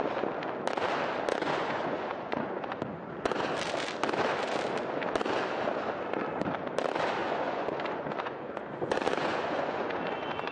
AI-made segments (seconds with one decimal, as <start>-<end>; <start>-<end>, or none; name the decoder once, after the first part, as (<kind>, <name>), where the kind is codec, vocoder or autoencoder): 1.3-3.4 (vocoder, Vocos); 7.2-10.5